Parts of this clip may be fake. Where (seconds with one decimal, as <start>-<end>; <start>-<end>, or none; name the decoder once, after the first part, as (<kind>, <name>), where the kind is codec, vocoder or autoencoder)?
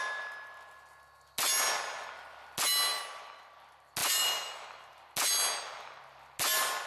2.9-3.5 (vocoder, BigVGAN v2); 4.0-4.9